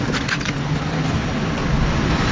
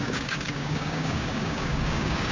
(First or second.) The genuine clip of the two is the first